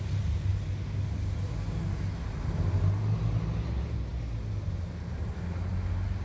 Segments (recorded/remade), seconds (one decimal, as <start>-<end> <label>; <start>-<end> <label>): 0.0-6.2 recorded